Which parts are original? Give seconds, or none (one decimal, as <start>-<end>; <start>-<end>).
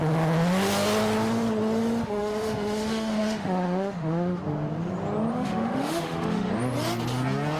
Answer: 0.0-2.0; 4.4-5.3; 6.5-7.6